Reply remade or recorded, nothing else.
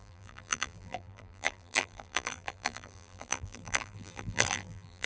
remade